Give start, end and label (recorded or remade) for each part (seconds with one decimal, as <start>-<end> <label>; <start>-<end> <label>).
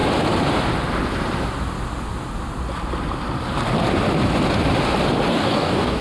0.0-5.3 recorded; 5.3-6.0 remade